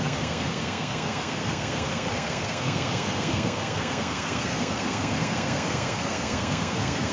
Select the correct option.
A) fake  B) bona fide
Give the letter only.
A